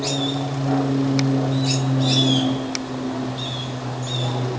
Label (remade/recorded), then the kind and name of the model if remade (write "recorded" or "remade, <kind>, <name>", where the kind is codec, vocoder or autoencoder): recorded